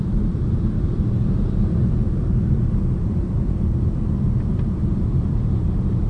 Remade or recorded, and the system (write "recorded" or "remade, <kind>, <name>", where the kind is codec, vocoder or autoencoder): remade, vocoder, BigVGAN v2